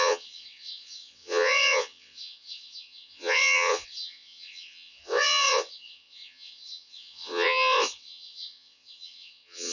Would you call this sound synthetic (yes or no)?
yes